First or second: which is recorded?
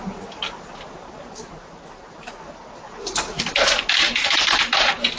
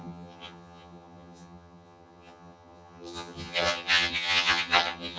first